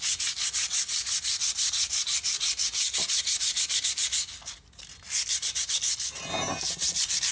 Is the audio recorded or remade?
recorded